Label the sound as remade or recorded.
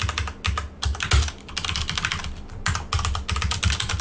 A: recorded